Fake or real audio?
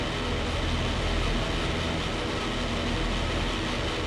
real